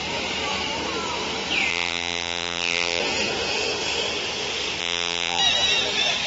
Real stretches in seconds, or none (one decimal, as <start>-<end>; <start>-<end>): 0.0-1.7; 3.0-4.8; 5.4-6.3

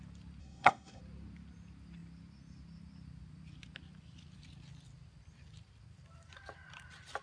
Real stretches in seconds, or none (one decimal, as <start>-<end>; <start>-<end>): 0.0-0.4; 1.0-7.2

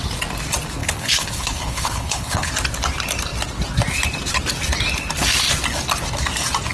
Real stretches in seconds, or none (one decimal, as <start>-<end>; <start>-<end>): 0.0-0.8; 2.5-6.7

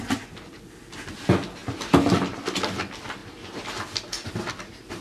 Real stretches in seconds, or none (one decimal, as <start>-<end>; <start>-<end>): 0.0-5.0

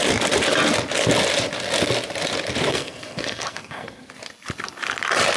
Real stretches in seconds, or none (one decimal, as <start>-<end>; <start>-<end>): 0.0-2.7; 4.1-5.4